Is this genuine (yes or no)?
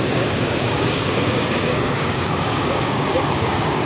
no